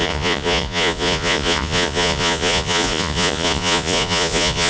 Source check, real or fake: fake